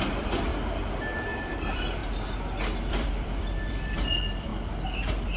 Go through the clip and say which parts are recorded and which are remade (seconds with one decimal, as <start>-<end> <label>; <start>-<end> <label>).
0.0-0.5 remade; 0.5-1.5 recorded; 1.5-2.0 remade; 2.0-2.9 recorded; 2.9-4.5 remade; 4.5-5.4 recorded